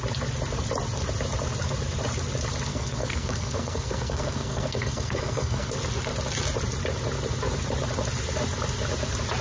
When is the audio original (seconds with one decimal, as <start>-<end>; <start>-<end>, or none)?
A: 0.0-2.7; 5.7-9.4